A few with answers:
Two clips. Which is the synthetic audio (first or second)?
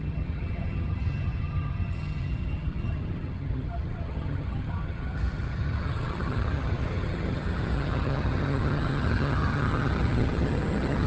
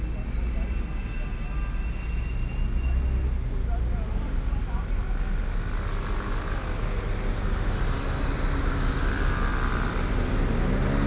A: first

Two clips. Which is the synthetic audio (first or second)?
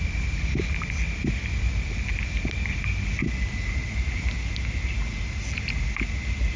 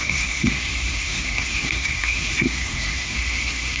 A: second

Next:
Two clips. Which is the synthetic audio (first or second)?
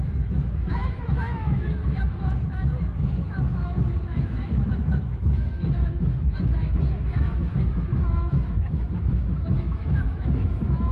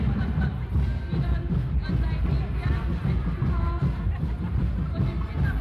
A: first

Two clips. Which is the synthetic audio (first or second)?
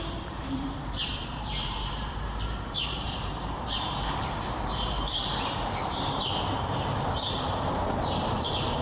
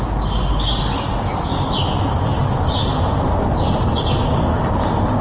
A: first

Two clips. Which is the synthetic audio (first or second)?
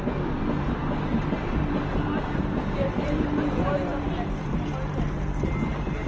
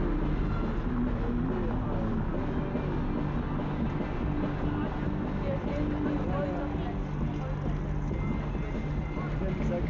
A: first